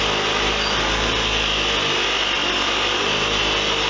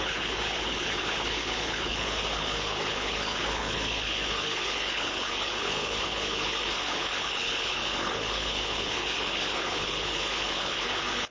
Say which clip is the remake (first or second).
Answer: second